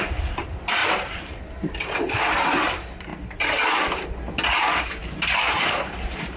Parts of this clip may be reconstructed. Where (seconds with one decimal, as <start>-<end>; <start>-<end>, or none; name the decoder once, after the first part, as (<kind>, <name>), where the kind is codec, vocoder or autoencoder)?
0.8-1.7 (vocoder, BigVGAN v2); 5.0-6.4